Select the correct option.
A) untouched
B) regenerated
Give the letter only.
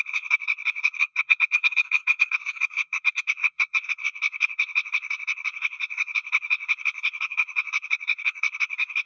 B